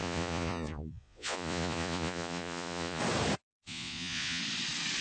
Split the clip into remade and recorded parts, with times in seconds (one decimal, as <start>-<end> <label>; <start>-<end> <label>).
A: 0.0-3.0 remade; 3.0-3.6 recorded; 3.6-4.4 remade; 4.4-5.0 recorded